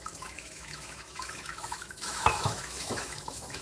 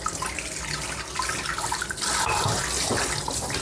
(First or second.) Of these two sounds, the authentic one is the second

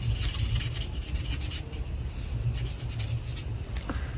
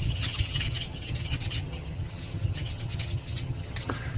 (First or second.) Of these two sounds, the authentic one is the first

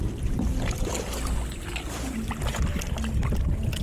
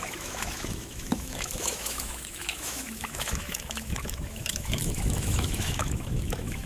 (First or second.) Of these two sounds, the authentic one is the first